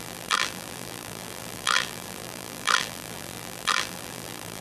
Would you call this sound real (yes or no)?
no